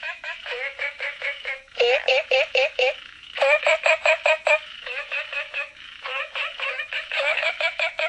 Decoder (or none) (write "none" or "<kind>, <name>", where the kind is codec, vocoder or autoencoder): autoencoder, DAC-VAE